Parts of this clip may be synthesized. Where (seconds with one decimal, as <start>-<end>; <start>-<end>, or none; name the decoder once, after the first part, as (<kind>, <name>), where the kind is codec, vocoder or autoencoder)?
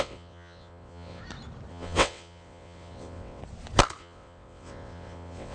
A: 0.0-1.2 (vocoder, WaveNeXt); 1.7-3.4; 4.0-5.5